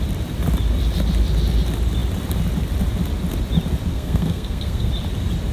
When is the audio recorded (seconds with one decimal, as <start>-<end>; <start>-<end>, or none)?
0.0-3.9; 4.9-5.5